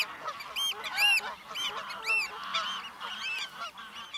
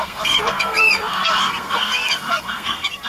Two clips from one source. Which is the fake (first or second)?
second